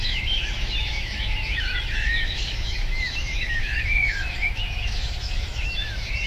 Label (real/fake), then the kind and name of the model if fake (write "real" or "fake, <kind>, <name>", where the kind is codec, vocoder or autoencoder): fake, autoencoder, DAC-VAE